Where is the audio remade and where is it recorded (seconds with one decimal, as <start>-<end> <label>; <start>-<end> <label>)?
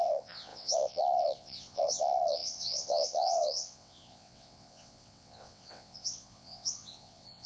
0.0-7.5 remade